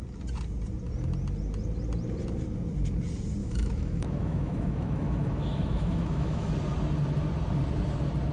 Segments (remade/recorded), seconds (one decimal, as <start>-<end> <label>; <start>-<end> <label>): 0.0-3.4 recorded; 3.4-6.5 remade; 6.5-8.3 recorded